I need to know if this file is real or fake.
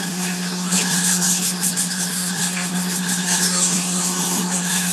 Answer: fake